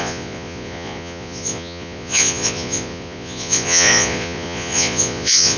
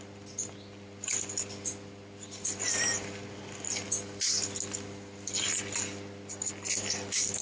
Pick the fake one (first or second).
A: first